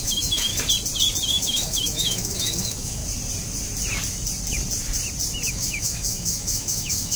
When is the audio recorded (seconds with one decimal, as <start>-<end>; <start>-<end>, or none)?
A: 0.5-1.3; 3.0-5.5